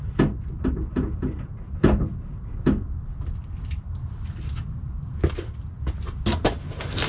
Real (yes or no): yes